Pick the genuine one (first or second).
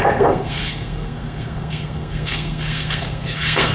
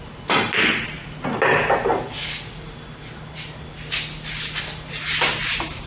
second